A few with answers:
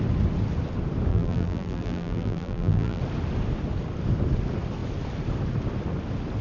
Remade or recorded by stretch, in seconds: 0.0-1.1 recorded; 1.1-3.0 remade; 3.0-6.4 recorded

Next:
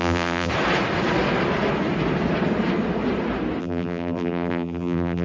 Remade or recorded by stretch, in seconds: 0.0-0.5 remade; 0.5-3.6 recorded; 3.6-5.2 remade

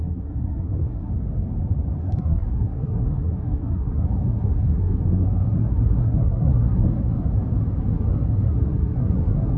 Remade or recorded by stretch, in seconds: 0.0-1.1 remade; 1.1-2.0 recorded; 2.0-7.3 remade; 7.3-7.8 recorded; 7.8-9.6 remade